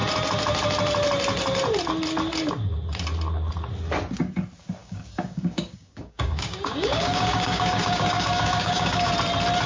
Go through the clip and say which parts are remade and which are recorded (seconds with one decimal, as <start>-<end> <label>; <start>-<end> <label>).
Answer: 0.0-4.8 recorded; 4.8-9.1 remade; 9.1-9.7 recorded